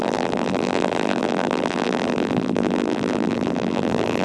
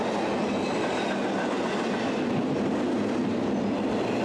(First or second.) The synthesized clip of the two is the first